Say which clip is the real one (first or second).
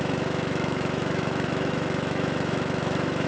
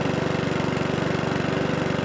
second